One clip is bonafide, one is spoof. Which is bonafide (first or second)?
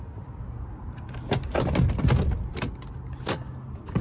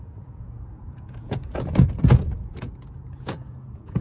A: first